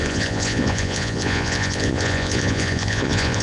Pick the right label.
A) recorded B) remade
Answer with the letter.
B